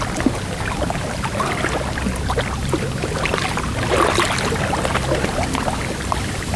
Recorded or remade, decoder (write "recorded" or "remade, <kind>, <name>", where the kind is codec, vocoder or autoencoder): recorded